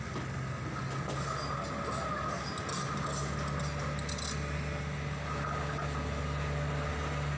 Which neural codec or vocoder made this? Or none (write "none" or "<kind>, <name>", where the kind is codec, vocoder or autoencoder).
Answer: none